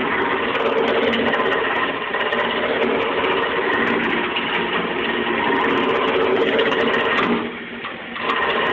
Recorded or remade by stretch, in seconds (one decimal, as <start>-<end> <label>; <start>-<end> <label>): 0.0-6.3 recorded; 6.3-6.8 remade; 6.8-8.7 recorded

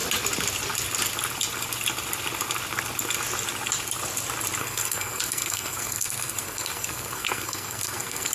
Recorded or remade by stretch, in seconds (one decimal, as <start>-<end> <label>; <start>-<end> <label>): 0.0-4.6 recorded; 4.6-8.3 remade